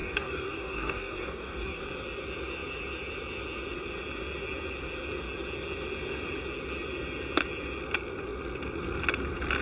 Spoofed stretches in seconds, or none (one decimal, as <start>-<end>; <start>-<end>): 0.0-1.8